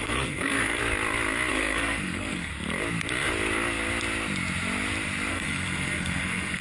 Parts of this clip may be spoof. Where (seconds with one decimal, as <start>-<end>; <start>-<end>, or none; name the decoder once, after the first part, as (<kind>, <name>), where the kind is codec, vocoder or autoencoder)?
0.0-0.8 (codec, SNAC); 1.5-2.5; 5.3-6.6